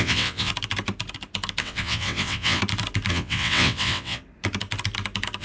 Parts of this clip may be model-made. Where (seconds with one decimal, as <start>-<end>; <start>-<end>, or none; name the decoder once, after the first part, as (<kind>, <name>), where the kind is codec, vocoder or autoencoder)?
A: 0.0-0.5 (vocoder, WaveNeXt); 1.6-2.6; 3.1-4.2